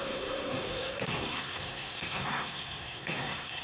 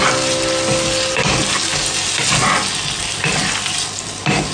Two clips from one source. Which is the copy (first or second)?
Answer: first